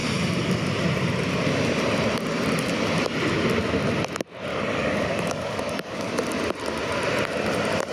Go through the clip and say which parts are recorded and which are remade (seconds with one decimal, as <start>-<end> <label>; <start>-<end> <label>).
0.0-4.5 recorded; 4.5-6.1 remade; 6.1-7.9 recorded